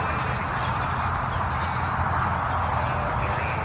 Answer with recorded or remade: recorded